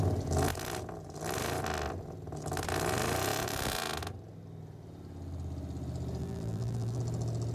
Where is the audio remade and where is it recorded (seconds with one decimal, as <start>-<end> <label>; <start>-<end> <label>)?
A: 0.0-6.2 recorded; 6.2-7.0 remade; 7.0-7.5 recorded